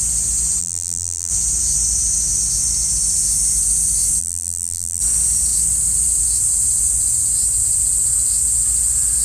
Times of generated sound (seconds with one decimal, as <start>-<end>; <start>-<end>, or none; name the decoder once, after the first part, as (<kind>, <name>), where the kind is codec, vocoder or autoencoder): 0.6-1.3 (vocoder, BigVGAN v2); 4.2-5.0